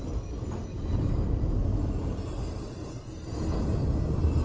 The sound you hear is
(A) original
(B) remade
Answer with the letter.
A